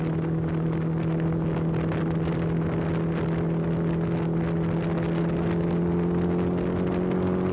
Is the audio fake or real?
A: real